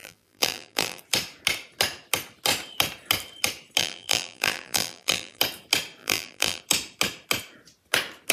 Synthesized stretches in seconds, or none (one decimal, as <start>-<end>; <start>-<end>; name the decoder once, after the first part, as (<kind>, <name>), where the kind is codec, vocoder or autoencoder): 0.0-1.0 (vocoder, BigVGAN v2); 3.8-5.4; 6.0-6.6